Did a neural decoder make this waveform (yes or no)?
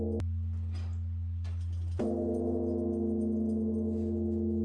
no